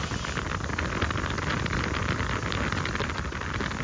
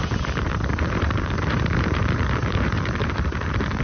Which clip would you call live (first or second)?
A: first